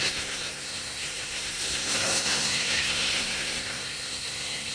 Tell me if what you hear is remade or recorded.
remade